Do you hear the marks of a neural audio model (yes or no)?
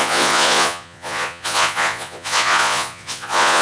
yes